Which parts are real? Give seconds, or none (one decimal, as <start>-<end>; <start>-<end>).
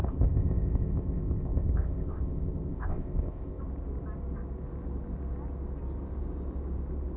3.6-7.2